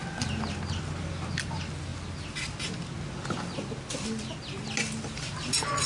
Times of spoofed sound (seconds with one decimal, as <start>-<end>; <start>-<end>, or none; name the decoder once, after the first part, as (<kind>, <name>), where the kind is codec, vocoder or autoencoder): none